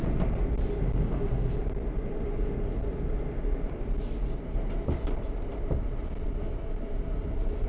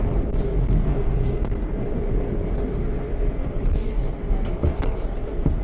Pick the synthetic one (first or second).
second